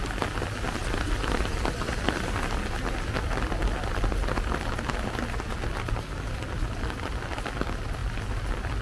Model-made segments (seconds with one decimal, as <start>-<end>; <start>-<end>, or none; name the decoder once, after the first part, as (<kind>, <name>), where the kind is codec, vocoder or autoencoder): none